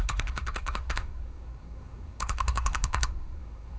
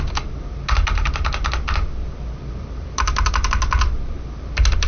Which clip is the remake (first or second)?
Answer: first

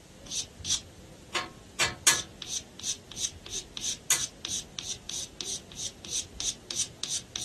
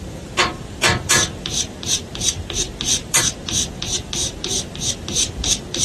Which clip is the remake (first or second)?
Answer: second